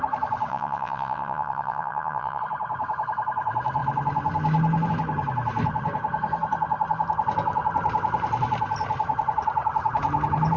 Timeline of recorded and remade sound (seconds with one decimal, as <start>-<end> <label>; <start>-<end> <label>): 0.0-0.5 recorded; 0.5-2.4 remade; 2.4-10.6 recorded